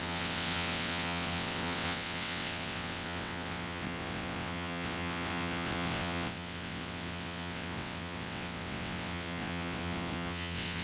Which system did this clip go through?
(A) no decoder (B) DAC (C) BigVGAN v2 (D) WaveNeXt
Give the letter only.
D